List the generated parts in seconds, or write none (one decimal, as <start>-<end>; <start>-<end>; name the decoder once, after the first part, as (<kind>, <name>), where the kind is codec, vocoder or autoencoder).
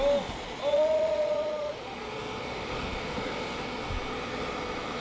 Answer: 0.7-2.2 (vocoder, Vocos)